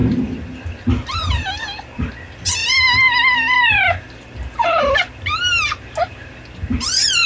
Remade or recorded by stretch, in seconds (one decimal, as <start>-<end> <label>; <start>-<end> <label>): 0.0-7.3 recorded